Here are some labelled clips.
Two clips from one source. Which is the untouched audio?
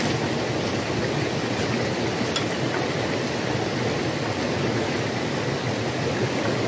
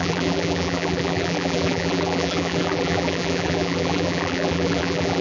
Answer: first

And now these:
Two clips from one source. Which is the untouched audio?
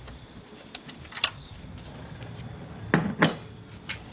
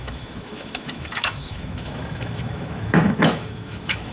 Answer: first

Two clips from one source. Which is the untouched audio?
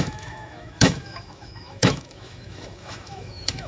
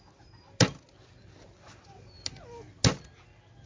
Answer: second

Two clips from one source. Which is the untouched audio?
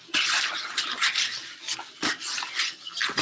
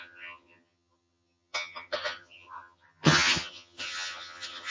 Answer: first